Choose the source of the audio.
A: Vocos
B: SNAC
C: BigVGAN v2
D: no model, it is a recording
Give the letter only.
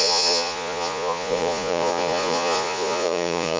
A